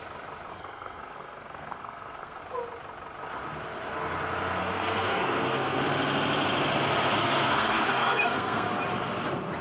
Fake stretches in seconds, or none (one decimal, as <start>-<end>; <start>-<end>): 0.5-2.4; 4.6-5.8; 7.2-8.7